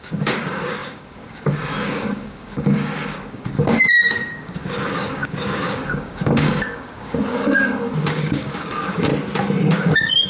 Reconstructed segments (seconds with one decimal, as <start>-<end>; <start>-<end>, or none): 0.0-9.1; 9.8-10.3